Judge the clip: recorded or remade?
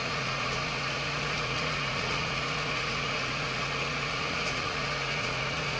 remade